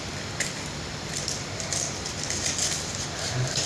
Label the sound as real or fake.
real